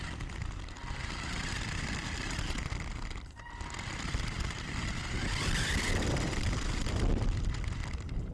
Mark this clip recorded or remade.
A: recorded